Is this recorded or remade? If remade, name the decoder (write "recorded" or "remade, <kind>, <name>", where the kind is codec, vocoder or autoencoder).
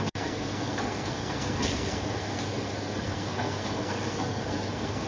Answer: remade, codec, SNAC